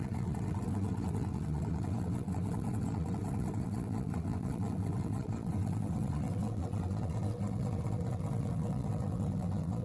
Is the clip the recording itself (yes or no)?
no